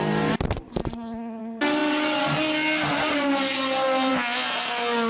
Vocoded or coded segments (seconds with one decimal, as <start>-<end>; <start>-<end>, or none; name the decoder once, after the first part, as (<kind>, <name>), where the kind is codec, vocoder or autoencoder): none